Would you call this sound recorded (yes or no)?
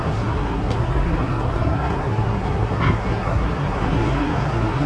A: no